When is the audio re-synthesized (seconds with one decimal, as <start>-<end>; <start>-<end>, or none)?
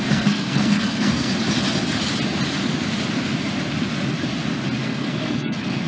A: 0.0-1.3; 4.8-5.9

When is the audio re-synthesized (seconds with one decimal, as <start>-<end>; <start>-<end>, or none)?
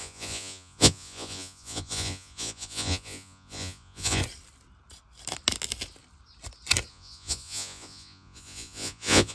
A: 0.0-4.2; 6.9-9.3